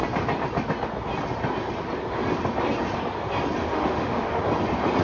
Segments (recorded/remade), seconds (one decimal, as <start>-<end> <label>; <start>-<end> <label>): 0.0-3.6 recorded; 3.6-4.4 remade; 4.4-5.0 recorded